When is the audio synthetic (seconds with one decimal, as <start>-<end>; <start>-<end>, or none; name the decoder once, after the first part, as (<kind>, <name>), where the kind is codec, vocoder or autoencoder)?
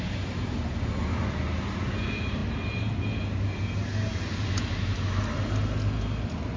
none